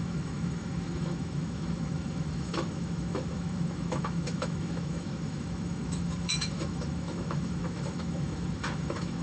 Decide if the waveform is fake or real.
fake